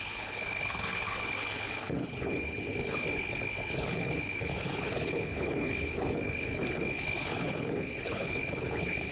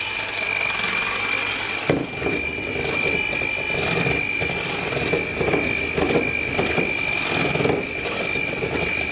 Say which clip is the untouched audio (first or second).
second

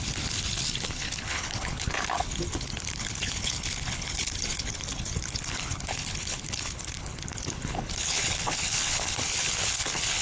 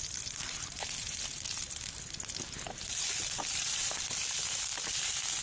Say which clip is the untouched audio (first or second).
second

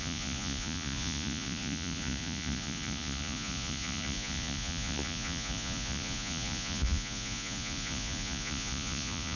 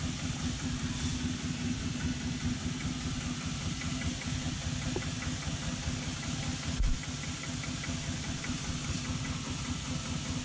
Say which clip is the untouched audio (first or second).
second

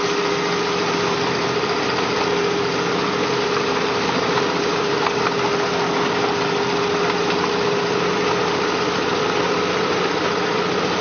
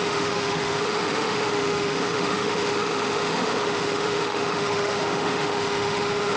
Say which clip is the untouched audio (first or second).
first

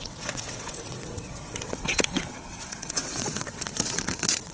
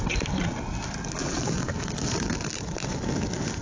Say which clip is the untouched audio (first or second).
second